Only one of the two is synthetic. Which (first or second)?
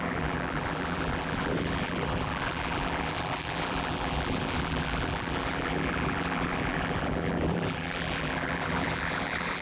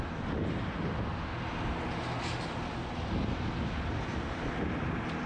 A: first